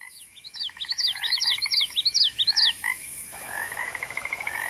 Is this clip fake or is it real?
fake